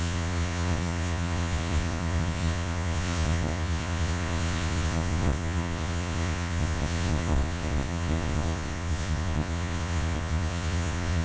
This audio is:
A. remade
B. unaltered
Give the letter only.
A